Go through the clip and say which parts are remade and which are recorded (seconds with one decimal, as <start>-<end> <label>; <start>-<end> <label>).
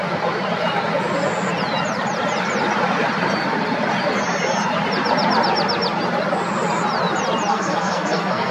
0.0-7.5 recorded; 7.5-8.5 remade